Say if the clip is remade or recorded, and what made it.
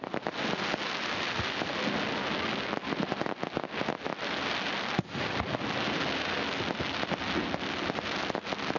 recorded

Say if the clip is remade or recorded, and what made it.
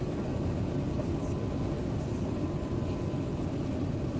recorded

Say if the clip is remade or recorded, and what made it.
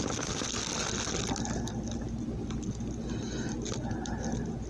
recorded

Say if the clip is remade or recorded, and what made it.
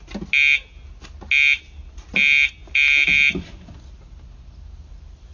recorded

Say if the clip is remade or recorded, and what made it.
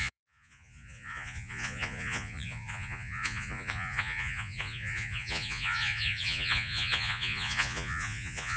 remade, vocoder, Vocos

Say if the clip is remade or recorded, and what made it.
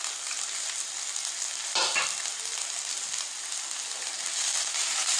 recorded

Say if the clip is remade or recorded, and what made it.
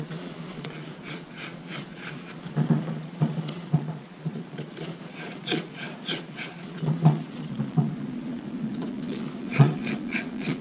remade, vocoder, Vocos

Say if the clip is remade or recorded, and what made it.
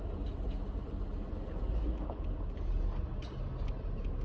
recorded